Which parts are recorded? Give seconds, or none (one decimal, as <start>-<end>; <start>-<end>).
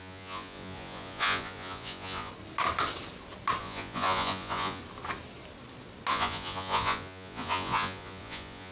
2.3-3.6; 4.8-6.1